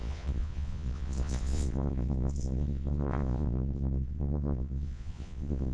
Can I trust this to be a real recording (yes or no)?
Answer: no